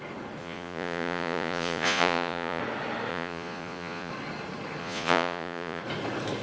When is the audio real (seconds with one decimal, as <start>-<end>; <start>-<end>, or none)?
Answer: 0.0-0.4; 2.6-3.1; 4.1-4.8; 5.8-6.4